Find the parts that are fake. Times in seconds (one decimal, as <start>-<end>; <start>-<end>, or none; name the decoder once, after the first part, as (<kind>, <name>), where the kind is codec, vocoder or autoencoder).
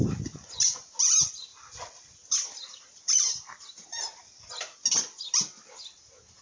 1.5-4.5 (vocoder, BigVGAN v2)